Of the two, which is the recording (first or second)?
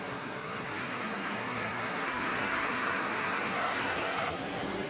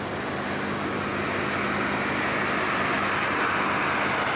second